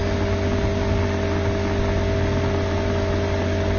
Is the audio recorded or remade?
recorded